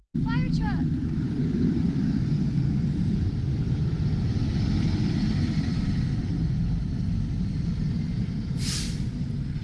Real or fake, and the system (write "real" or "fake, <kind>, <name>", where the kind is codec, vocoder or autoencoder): real